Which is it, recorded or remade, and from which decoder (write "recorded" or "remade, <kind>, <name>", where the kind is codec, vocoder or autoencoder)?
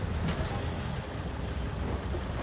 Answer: recorded